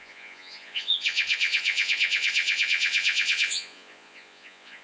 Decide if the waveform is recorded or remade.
remade